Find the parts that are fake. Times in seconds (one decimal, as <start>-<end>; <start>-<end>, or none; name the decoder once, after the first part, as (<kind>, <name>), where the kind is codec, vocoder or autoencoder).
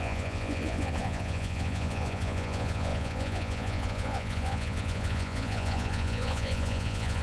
0.0-7.2 (vocoder, Vocos)